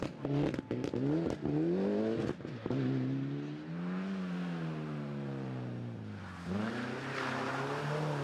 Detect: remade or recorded recorded